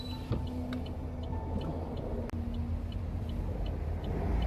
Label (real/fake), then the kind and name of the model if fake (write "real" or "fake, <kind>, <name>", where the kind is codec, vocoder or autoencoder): real